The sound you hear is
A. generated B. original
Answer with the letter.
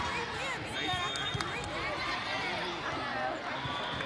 B